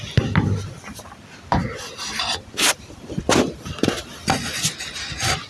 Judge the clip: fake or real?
real